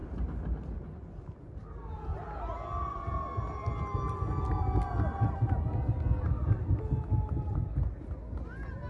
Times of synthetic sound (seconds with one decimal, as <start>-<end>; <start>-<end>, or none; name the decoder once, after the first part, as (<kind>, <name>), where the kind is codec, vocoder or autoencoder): none